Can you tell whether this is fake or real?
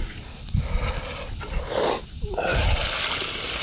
real